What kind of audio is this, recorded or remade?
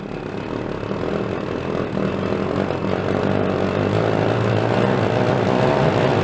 recorded